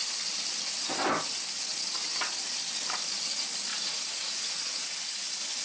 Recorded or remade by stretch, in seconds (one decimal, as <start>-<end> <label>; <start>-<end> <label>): 0.0-3.7 recorded; 3.7-5.0 remade; 5.0-5.6 recorded